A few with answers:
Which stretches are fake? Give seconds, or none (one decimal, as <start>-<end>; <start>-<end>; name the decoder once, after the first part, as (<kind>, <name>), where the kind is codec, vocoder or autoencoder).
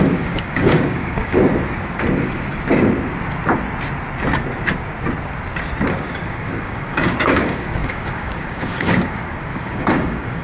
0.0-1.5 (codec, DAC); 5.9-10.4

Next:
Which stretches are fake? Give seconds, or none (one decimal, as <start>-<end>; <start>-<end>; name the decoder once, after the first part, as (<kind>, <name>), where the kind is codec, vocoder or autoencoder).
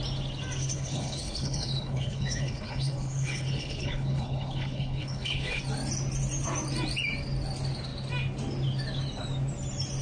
0.6-5.6 (codec, HILCodec)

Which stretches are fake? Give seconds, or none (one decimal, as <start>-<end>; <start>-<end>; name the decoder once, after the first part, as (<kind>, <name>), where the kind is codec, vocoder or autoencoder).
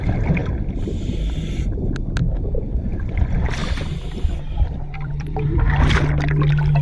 0.4-1.1 (vocoder, BigVGAN v2); 3.6-5.6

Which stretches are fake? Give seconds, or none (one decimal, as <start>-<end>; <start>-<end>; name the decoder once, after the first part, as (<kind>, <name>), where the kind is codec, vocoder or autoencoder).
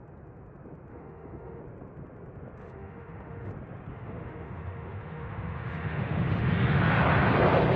0.9-1.6 (autoencoder, DAC-VAE); 2.6-3.5; 3.9-6.8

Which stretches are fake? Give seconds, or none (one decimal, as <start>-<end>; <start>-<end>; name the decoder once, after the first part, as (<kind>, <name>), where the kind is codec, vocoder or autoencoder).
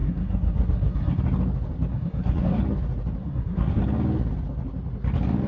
0.0-1.2 (codec, SNAC); 1.9-2.6; 3.2-3.8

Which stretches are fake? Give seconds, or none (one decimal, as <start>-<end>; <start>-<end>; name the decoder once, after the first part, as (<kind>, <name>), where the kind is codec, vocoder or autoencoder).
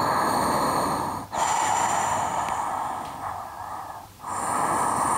1.5-4.6 (vocoder, BigVGAN v2)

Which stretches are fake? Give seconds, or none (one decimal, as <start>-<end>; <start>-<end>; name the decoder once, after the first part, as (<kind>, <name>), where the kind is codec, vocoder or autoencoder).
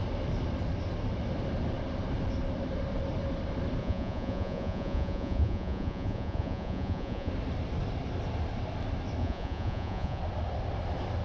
3.8-7.3 (vocoder, Vocos); 9.2-10.2